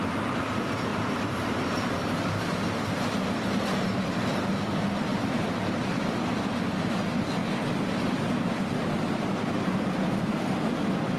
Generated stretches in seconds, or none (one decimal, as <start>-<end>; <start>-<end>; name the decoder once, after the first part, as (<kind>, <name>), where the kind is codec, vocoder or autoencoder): 0.9-2.9 (vocoder, BigVGAN v2); 5.1-6.0